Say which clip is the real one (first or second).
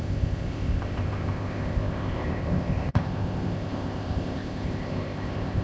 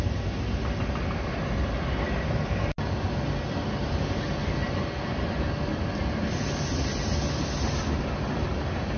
second